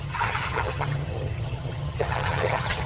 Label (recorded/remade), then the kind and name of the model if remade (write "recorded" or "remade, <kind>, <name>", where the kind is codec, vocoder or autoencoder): remade, vocoder, HiFi-GAN